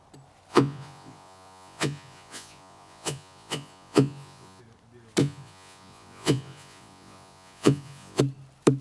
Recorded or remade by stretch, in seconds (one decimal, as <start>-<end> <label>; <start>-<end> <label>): 0.0-0.5 recorded; 0.5-4.6 remade; 4.6-5.2 recorded; 5.2-8.2 remade; 8.2-8.8 recorded